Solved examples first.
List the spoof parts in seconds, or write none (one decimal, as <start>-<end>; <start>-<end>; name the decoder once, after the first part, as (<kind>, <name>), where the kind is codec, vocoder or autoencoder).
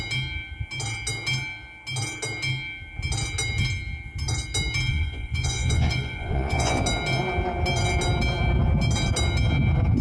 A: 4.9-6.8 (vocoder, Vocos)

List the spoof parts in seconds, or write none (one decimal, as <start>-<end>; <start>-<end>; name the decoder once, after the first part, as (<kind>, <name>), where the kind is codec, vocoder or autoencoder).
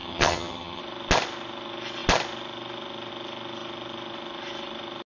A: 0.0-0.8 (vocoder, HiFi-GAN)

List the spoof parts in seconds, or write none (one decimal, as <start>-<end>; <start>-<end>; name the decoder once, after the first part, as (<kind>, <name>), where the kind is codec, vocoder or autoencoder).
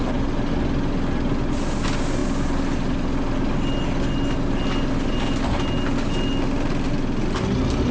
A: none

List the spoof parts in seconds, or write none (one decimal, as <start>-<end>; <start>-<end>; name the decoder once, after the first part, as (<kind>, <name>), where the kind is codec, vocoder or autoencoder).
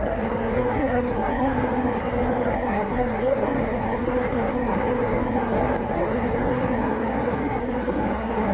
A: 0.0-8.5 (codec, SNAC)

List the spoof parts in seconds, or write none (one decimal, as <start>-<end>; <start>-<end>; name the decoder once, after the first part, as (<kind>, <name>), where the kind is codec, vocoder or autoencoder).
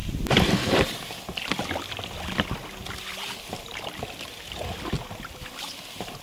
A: 0.0-2.8 (vocoder, BigVGAN v2); 5.6-6.2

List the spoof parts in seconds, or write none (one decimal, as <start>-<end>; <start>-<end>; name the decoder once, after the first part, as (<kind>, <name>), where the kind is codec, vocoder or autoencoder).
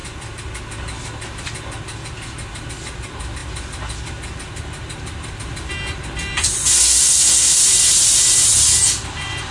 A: 6.7-7.6 (codec, SNAC)